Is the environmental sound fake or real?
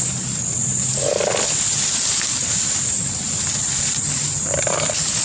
real